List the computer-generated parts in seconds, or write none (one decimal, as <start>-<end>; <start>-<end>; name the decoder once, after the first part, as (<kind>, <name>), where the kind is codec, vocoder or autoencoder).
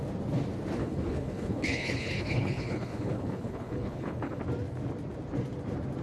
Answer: 0.8-4.4 (codec, HILCodec)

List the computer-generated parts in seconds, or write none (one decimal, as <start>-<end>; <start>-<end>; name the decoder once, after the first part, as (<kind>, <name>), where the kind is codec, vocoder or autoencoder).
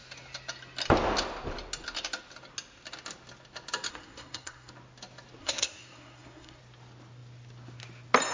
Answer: 3.9-4.7 (codec, SNAC); 5.4-6.6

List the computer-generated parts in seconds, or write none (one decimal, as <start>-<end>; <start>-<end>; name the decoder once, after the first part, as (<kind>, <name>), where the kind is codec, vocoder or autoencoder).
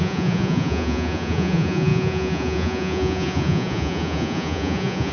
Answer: 0.0-5.1 (vocoder, Vocos)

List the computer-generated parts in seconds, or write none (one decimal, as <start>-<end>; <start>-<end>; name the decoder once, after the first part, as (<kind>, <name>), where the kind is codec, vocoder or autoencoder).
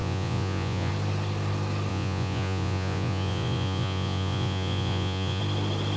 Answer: 0.0-0.9 (vocoder, Vocos); 1.9-5.4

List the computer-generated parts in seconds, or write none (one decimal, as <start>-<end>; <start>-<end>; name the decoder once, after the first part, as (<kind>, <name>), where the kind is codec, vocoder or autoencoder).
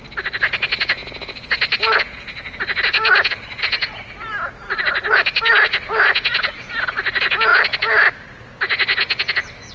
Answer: none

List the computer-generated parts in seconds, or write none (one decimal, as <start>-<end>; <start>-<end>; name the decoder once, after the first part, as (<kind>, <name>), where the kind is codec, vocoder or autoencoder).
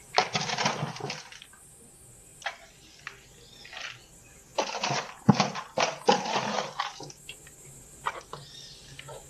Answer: none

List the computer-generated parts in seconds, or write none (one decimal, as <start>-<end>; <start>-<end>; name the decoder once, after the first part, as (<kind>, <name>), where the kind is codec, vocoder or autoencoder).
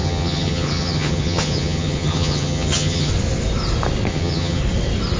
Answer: 0.0-3.1 (vocoder, HiFi-GAN); 4.1-4.6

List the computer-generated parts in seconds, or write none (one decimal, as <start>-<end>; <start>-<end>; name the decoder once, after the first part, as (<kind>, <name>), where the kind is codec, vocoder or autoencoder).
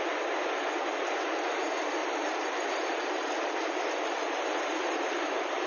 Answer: 2.0-5.7 (vocoder, BigVGAN v2)